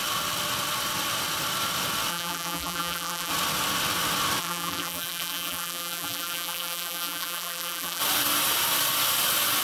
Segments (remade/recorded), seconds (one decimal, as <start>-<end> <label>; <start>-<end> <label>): 0.0-2.1 recorded; 2.1-3.3 remade; 3.3-4.4 recorded; 4.4-8.0 remade; 8.0-9.6 recorded